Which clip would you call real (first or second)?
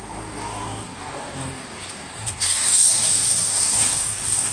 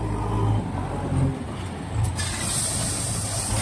second